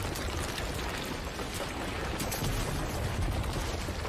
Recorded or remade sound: recorded